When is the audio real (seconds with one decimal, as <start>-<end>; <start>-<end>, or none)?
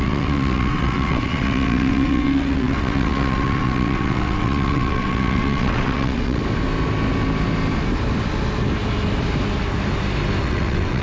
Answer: 6.4-10.4